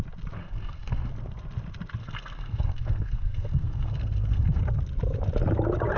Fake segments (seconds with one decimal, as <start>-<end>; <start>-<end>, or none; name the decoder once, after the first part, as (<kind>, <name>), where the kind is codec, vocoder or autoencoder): 0.4-1.1 (codec, SNAC); 2.0-4.6